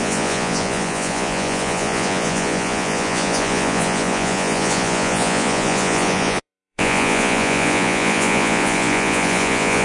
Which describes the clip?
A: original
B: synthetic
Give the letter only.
B